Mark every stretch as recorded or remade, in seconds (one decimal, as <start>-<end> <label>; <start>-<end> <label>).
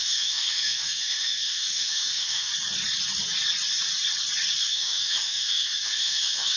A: 0.0-2.5 remade; 2.5-4.6 recorded; 4.6-6.6 remade